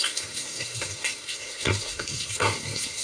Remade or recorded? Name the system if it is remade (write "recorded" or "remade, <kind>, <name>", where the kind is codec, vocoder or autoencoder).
remade, codec, SNAC